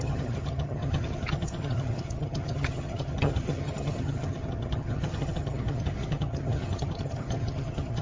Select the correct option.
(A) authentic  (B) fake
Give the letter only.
B